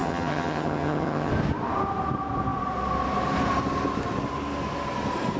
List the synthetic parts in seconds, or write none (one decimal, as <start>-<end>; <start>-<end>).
0.0-1.3